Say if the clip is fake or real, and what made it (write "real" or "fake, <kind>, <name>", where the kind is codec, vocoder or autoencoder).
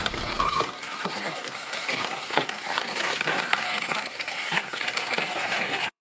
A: fake, codec, SNAC